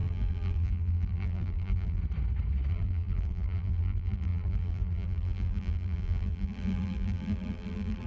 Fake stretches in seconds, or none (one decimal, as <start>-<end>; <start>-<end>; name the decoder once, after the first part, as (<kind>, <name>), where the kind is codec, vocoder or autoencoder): 0.0-2.0 (vocoder, BigVGAN v2); 2.7-8.1